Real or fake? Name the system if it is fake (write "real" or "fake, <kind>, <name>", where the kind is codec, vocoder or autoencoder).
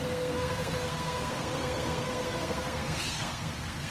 fake, codec, SNAC